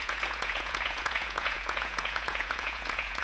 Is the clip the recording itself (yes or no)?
no